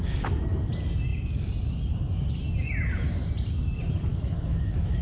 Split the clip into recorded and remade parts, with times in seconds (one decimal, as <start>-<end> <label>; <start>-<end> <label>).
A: 0.0-4.1 recorded; 4.1-5.0 remade